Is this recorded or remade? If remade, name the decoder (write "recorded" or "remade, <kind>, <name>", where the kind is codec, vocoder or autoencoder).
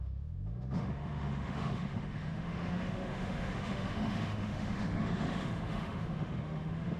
remade, autoencoder, DAC-VAE